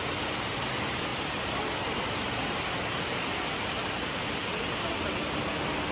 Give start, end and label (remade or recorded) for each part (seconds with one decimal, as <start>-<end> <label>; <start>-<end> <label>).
0.0-1.1 recorded; 1.1-4.6 remade; 4.6-5.9 recorded